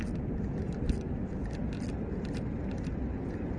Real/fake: real